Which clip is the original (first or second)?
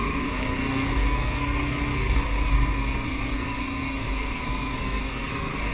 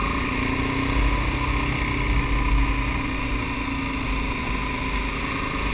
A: second